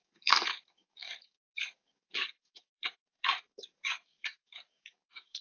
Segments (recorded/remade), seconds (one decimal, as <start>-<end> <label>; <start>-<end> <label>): 0.0-5.4 remade